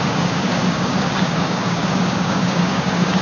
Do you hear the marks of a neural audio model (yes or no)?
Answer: yes